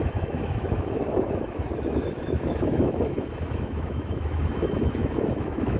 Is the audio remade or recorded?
remade